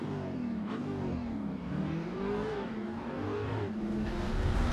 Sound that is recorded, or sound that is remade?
remade